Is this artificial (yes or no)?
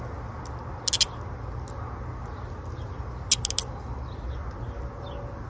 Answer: no